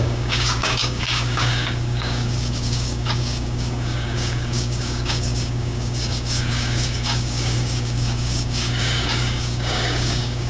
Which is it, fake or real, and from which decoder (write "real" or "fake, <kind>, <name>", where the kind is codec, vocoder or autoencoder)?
fake, codec, DAC